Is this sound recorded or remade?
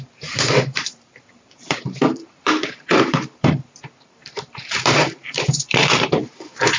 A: remade